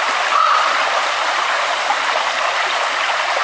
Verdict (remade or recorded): recorded